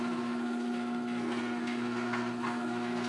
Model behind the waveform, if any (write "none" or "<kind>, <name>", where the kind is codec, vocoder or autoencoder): codec, SNAC